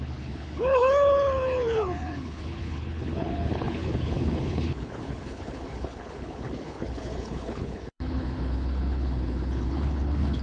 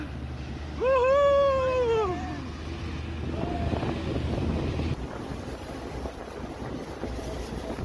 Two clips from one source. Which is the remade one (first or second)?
first